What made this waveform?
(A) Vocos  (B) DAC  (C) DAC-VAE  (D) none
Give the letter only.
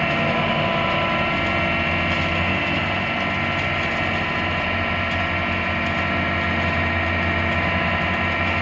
D